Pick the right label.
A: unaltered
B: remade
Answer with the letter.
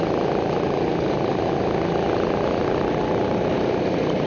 A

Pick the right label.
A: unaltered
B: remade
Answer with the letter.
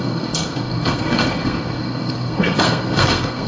B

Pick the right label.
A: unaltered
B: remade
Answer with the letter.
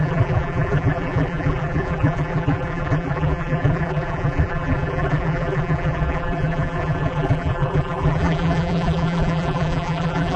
B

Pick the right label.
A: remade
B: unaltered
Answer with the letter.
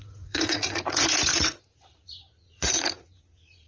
A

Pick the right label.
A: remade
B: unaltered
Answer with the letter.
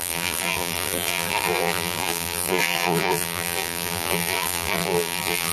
A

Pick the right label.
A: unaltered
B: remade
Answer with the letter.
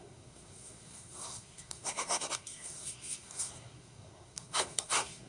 B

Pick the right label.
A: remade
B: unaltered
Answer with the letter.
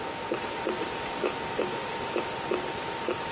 B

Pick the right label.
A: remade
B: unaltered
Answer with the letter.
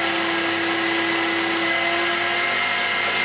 B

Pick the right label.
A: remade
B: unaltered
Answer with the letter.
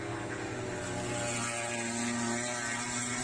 B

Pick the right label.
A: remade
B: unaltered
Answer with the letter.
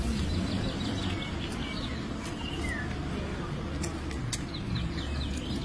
B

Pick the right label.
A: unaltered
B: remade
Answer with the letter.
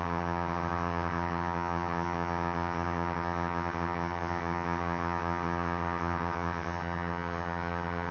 B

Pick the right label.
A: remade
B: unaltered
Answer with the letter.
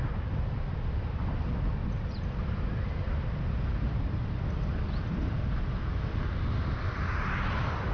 A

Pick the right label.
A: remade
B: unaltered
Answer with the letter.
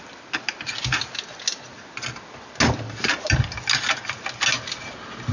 B